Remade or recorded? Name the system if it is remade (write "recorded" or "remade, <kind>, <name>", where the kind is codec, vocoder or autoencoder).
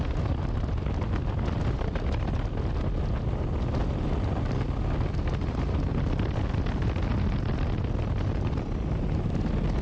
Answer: recorded